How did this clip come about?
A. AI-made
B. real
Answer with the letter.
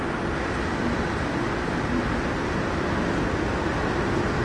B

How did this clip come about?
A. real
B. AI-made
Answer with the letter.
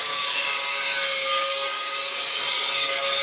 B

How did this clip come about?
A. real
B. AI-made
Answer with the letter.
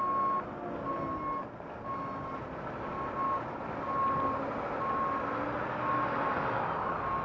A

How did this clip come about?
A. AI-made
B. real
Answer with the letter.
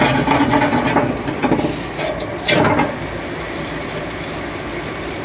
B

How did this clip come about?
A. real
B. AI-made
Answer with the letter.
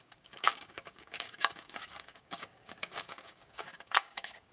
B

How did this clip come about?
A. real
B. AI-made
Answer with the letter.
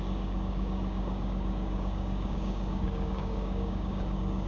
B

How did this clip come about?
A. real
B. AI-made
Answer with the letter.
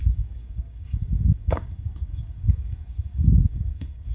B